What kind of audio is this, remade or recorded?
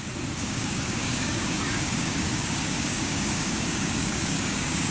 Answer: remade